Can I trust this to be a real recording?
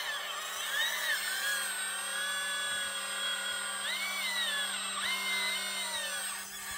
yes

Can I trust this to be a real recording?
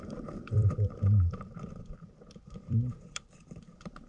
no